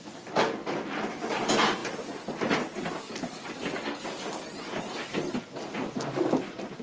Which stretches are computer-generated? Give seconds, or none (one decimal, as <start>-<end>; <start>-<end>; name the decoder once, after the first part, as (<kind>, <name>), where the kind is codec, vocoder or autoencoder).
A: none